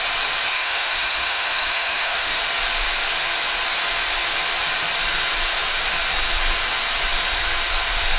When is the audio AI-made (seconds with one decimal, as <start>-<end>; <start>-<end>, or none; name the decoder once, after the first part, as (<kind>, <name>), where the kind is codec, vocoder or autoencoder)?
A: 0.5-2.4 (autoencoder, DAC-VAE)